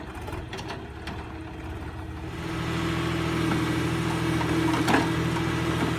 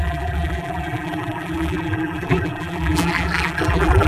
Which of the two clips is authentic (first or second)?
first